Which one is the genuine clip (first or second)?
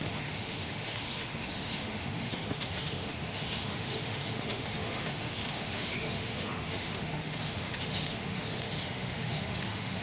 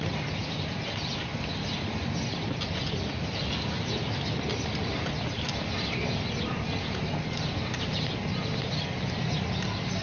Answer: second